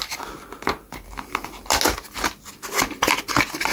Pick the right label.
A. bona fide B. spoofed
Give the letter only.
A